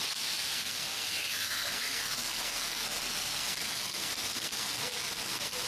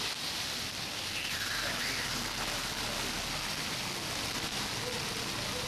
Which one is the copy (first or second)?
first